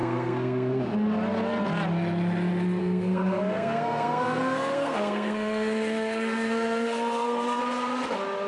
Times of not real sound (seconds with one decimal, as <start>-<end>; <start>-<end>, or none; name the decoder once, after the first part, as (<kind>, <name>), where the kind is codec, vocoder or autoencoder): 0.0-0.8 (codec, SNAC); 2.8-7.6